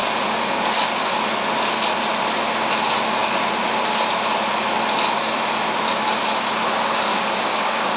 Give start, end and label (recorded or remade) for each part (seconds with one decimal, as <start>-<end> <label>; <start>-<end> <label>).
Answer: 0.0-7.1 recorded; 7.1-8.0 remade